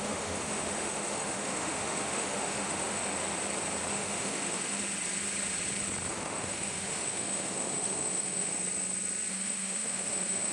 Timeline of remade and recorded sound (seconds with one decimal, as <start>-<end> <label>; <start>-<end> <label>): 0.0-3.0 remade; 3.0-3.9 recorded; 3.9-4.8 remade; 4.8-6.1 recorded; 6.1-8.5 remade; 8.5-9.3 recorded; 9.3-10.5 remade